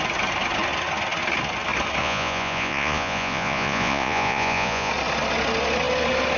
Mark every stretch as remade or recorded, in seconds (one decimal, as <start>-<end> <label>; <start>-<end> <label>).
0.0-2.0 recorded; 2.0-4.9 remade; 4.9-6.4 recorded